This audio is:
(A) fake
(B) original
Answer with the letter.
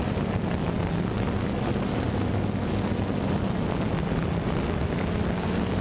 B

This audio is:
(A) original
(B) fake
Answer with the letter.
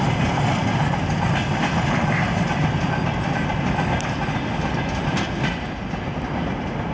A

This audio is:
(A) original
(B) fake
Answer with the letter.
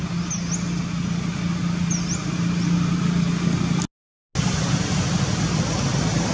A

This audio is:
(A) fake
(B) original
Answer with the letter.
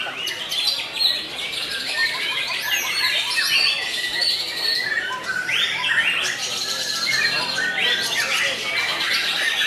B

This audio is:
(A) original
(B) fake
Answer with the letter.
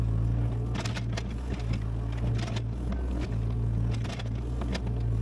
A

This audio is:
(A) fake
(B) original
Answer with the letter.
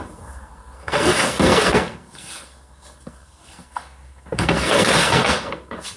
A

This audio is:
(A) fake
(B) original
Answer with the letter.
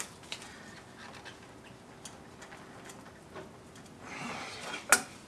B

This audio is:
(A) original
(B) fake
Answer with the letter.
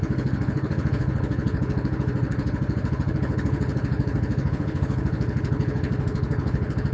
B